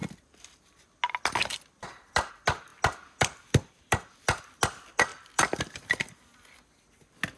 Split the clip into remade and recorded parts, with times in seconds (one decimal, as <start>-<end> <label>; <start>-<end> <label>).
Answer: 0.0-7.4 recorded